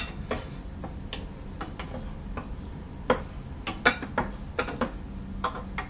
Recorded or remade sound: recorded